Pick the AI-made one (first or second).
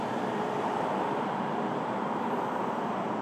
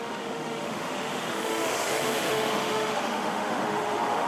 second